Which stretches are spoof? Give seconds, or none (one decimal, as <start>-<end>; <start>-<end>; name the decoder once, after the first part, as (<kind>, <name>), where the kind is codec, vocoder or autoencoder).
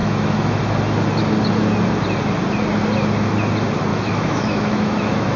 0.0-0.6 (autoencoder, DAC-VAE); 3.9-5.4